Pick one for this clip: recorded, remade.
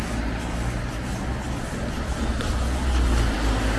recorded